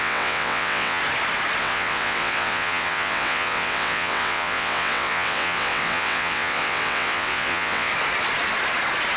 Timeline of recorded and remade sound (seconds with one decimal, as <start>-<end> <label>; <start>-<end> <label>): 0.0-1.0 remade; 1.0-1.6 recorded; 1.6-7.9 remade; 7.9-9.2 recorded